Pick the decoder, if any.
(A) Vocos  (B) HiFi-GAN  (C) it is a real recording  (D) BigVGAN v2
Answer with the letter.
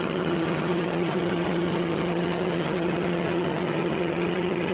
B